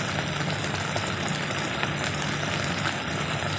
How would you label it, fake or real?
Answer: real